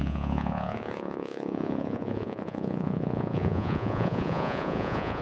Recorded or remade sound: remade